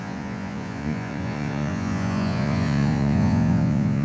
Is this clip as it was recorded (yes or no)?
no